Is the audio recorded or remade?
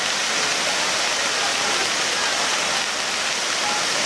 recorded